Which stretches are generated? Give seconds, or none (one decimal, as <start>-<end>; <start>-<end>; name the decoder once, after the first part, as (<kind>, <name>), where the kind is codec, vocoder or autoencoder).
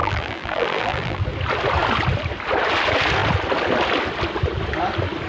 0.0-1.2 (vocoder, BigVGAN v2)